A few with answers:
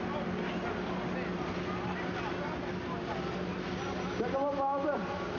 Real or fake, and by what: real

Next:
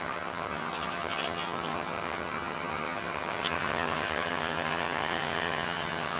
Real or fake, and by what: fake, vocoder, HiFi-GAN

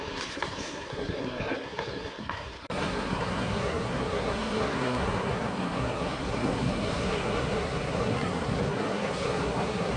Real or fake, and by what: fake, codec, SNAC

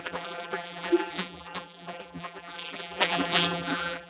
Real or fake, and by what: fake, vocoder, BigVGAN v2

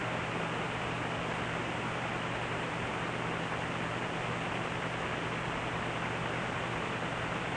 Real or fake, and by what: real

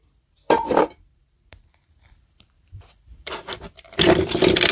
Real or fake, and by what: fake, vocoder, BigVGAN v2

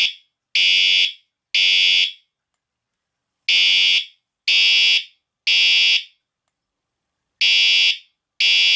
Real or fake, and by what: real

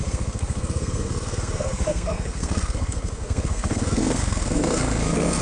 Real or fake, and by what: fake, codec, SNAC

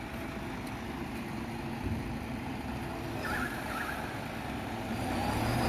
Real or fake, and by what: real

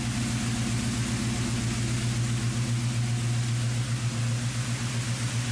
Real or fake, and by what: real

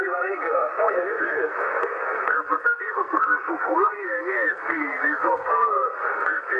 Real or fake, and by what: fake, codec, SNAC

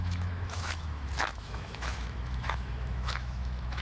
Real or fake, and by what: fake, autoencoder, DAC-VAE